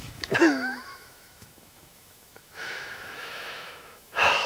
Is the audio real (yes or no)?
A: no